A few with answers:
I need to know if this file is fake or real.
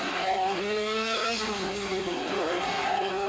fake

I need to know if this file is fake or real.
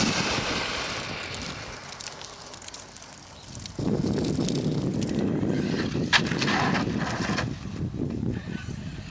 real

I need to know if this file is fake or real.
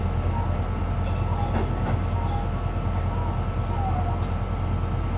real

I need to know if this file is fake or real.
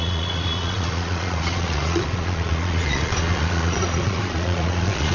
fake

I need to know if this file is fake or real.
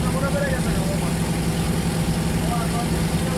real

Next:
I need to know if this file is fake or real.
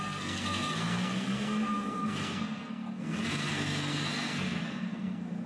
fake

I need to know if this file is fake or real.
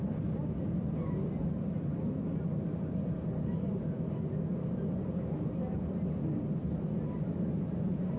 real